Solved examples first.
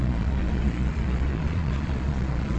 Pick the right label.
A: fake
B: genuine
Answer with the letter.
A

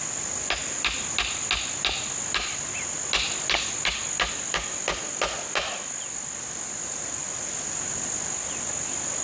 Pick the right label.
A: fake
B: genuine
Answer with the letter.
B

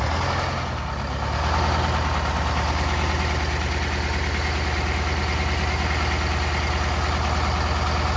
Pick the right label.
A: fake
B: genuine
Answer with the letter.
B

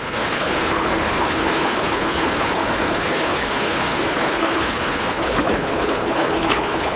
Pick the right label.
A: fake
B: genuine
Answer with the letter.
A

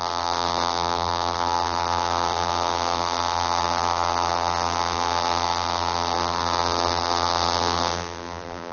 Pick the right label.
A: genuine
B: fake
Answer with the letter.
B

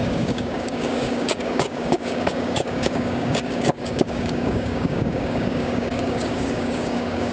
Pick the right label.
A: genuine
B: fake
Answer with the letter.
B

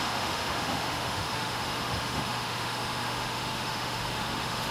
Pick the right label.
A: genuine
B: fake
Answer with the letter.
B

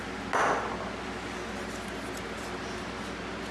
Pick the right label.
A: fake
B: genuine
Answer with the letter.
B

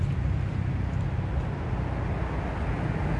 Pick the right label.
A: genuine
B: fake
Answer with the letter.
A